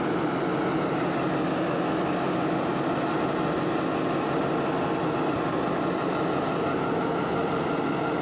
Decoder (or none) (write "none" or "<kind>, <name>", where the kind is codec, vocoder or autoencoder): none